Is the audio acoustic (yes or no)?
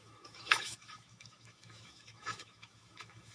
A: no